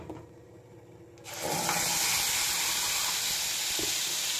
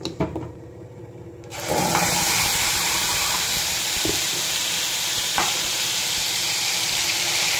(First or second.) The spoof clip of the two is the second